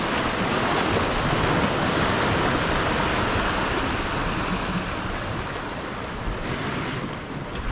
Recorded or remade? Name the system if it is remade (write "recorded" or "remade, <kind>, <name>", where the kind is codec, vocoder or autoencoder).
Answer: recorded